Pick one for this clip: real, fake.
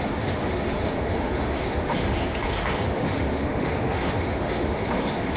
fake